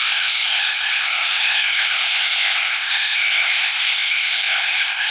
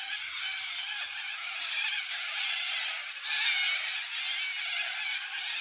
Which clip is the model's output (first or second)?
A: first